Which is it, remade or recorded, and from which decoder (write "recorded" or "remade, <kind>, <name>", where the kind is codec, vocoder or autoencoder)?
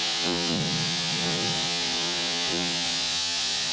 remade, vocoder, Vocos